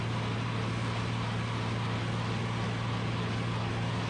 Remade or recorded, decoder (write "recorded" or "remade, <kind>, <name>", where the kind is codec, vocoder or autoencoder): recorded